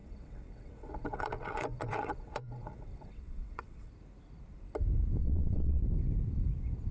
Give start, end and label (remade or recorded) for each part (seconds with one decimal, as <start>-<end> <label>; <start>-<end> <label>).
0.0-3.9 remade; 3.9-5.2 recorded; 5.2-5.8 remade; 5.8-6.9 recorded